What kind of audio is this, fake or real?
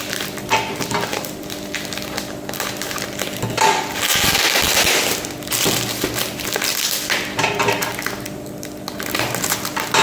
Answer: real